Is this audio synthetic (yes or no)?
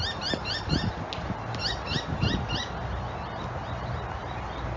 no